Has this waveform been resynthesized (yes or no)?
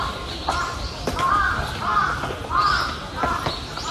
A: no